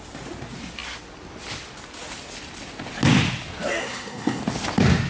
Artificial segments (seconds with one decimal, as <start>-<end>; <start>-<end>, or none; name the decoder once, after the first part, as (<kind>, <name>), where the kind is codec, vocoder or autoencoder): 3.8-4.4 (codec, SNAC)